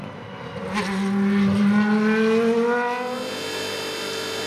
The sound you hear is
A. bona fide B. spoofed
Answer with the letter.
A